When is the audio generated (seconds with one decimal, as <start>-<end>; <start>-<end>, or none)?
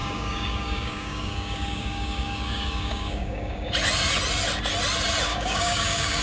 0.0-3.7; 5.3-6.2